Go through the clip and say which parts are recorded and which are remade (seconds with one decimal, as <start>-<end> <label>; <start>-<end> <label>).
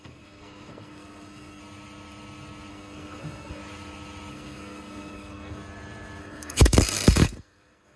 0.0-1.6 remade; 1.6-2.7 recorded; 2.7-3.6 remade; 3.6-4.3 recorded; 4.3-5.6 remade; 5.6-6.2 recorded; 6.2-8.0 remade